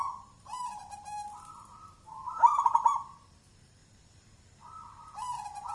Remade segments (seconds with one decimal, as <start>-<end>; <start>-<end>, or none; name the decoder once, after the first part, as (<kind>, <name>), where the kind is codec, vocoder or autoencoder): 0.0-0.8 (vocoder, BigVGAN v2); 2.5-3.8